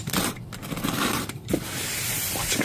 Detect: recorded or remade recorded